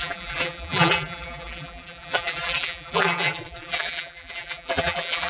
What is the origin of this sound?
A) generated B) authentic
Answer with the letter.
A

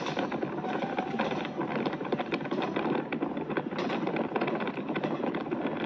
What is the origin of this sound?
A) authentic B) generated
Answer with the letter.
B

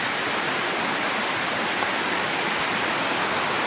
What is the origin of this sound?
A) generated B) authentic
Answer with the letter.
B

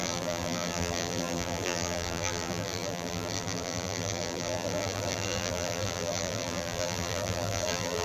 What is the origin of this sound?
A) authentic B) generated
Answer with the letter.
B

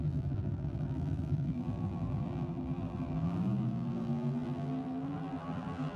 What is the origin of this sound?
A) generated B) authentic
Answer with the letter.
A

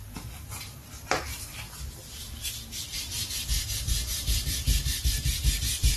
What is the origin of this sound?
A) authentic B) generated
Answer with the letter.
A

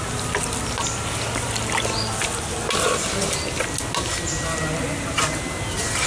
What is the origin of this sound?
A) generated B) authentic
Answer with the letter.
B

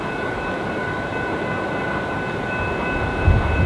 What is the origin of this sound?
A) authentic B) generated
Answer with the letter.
A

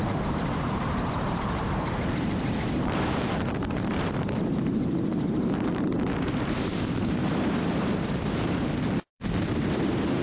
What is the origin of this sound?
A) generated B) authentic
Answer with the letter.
A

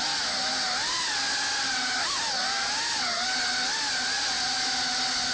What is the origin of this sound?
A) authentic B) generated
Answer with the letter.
A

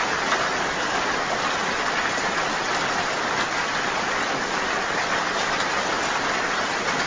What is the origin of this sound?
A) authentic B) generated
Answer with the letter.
A